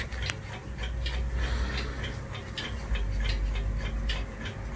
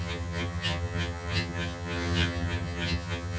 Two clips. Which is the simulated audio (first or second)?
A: second